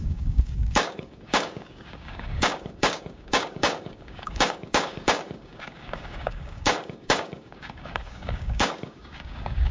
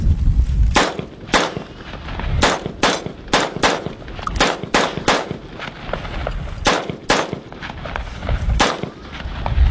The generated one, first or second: first